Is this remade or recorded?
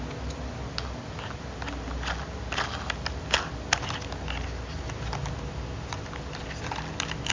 recorded